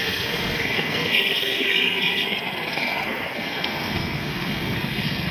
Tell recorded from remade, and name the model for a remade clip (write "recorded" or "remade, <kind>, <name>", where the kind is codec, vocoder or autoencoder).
remade, codec, SNAC